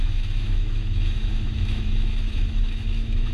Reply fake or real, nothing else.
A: fake